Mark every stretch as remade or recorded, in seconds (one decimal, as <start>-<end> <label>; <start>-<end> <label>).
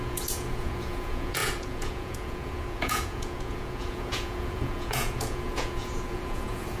0.0-6.8 remade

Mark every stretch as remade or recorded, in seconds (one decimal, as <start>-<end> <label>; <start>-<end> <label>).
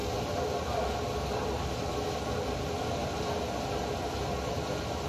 0.0-5.1 recorded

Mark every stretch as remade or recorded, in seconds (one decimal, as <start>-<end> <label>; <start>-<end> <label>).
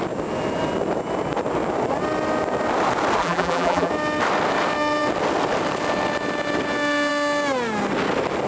0.0-3.2 recorded; 3.2-3.9 remade; 3.9-8.5 recorded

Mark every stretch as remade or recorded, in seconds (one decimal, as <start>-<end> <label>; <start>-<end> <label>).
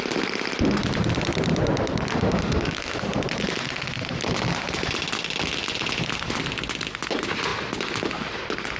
0.0-2.1 recorded; 2.1-3.0 remade; 3.0-8.8 recorded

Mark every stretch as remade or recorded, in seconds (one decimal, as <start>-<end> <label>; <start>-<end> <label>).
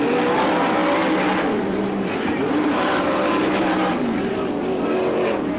0.0-1.7 recorded; 1.7-3.9 remade; 3.9-5.6 recorded